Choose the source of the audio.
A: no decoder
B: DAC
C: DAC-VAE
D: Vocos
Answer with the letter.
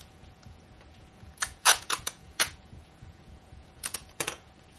D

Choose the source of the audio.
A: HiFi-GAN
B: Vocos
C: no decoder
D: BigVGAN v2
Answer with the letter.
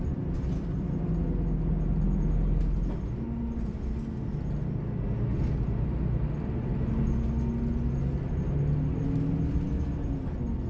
C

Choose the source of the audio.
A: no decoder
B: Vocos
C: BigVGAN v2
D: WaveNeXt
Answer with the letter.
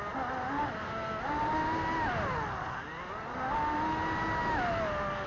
A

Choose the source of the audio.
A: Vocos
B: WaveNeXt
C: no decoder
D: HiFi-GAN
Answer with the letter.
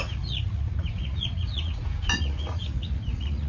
A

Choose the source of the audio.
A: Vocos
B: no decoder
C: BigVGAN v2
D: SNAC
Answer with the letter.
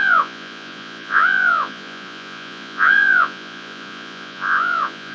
A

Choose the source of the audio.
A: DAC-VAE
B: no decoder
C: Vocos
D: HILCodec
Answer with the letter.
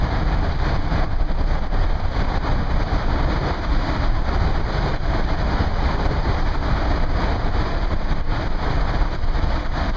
B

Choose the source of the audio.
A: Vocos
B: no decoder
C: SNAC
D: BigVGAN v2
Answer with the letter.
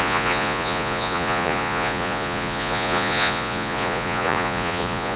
A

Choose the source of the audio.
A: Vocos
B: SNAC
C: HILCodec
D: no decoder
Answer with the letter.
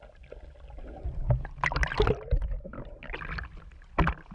D